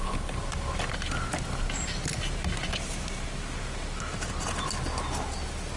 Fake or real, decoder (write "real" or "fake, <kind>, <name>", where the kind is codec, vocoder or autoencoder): real